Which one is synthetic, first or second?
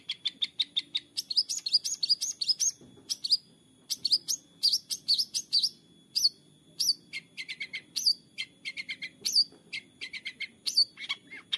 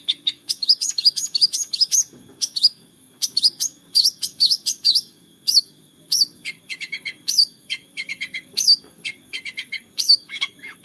second